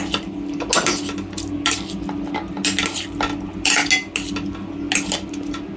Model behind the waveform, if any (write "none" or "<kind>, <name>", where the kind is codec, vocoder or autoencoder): none